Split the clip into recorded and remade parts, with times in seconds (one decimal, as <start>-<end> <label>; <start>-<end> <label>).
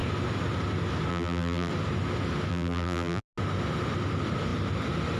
0.0-1.1 recorded; 1.1-1.7 remade; 1.7-2.5 recorded; 2.5-3.2 remade; 3.2-5.2 recorded